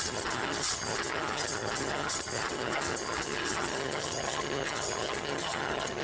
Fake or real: fake